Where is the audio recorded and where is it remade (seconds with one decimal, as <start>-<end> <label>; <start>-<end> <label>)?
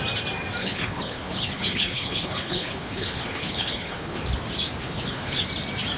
0.0-0.6 recorded; 0.6-4.2 remade; 4.2-4.8 recorded; 4.8-5.4 remade; 5.4-6.0 recorded